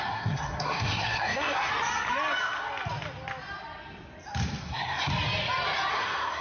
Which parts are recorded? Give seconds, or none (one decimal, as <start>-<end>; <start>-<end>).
1.7-4.6; 5.1-5.9